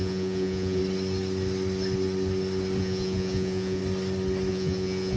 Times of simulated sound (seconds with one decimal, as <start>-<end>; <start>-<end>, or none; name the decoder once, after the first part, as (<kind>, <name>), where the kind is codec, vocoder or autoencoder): 0.0-0.8 (vocoder, Vocos); 2.8-3.8; 4.5-5.2